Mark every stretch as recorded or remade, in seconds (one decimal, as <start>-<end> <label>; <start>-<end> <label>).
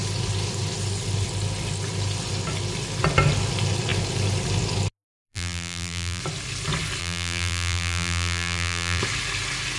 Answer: 0.0-5.3 recorded; 5.3-6.2 remade; 6.2-7.0 recorded; 7.0-9.0 remade; 9.0-9.8 recorded